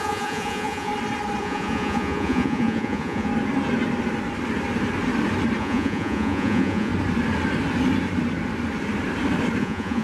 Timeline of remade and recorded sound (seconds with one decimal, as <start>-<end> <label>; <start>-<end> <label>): 0.0-0.9 remade; 0.9-1.4 recorded; 1.4-3.3 remade; 3.3-5.6 recorded; 5.6-6.9 remade; 6.9-9.6 recorded; 9.6-10.0 remade